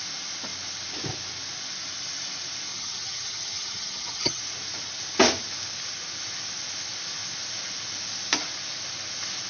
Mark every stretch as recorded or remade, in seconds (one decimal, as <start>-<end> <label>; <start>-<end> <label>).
0.0-2.7 recorded; 2.7-4.4 remade; 4.4-9.5 recorded